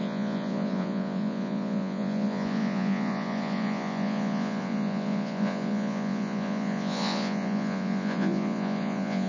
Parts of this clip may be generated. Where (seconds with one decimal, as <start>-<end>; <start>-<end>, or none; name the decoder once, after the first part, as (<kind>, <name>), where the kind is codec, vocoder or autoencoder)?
0.0-9.3 (vocoder, Vocos)